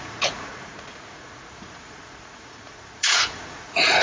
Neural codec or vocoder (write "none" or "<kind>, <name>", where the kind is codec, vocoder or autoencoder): vocoder, Vocos